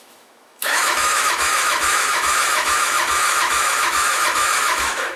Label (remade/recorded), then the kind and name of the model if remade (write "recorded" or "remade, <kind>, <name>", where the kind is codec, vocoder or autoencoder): remade, autoencoder, DAC-VAE